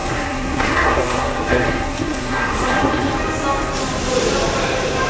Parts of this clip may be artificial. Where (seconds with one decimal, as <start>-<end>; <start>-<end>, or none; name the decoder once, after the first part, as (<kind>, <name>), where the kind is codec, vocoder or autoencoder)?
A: 0.0-3.1 (codec, SNAC)